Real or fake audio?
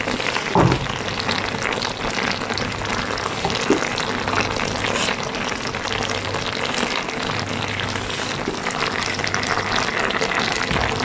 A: real